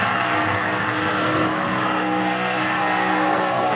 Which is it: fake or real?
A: fake